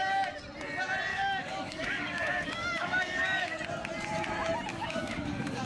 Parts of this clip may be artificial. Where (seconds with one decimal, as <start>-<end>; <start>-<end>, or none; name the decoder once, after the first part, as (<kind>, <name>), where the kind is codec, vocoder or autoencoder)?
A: 1.1-3.6 (codec, DAC); 4.7-5.7